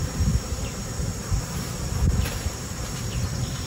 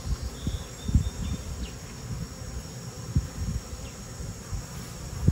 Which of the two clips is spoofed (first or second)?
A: first